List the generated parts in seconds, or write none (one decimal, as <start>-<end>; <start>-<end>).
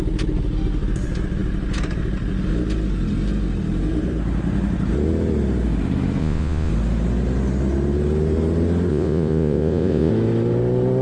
6.2-6.7; 8.9-10.1